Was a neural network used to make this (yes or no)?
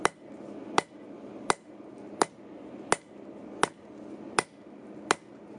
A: no